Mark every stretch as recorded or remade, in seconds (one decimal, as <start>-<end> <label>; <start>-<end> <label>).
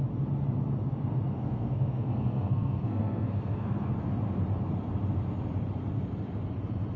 0.0-1.3 recorded; 1.3-3.9 remade; 3.9-7.0 recorded